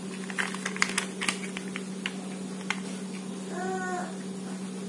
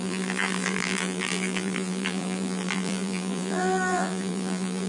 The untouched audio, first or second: first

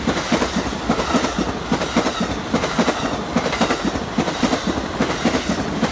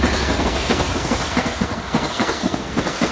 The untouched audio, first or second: first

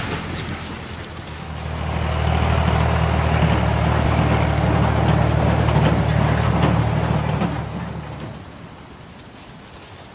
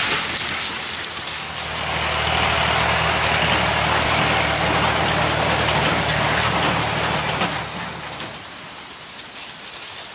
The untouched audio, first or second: second